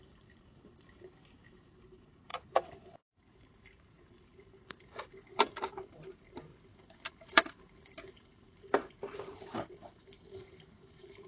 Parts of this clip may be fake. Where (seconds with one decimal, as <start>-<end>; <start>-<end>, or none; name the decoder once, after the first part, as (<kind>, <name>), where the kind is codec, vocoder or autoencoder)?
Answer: 0.0-6.5 (vocoder, BigVGAN v2); 7.1-11.3